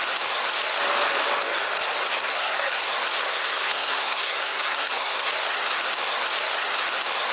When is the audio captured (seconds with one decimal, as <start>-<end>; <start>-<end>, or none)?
0.0-2.1; 2.7-3.2; 5.3-7.3